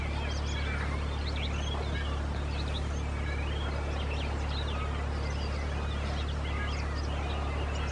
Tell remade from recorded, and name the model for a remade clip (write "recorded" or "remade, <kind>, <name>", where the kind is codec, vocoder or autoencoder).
recorded